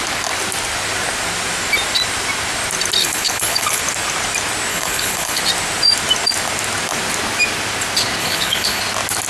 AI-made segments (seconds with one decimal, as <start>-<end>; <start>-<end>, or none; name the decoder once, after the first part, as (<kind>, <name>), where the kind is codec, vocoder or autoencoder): 3.0-3.8 (codec, HILCodec); 4.7-5.4; 8.2-8.8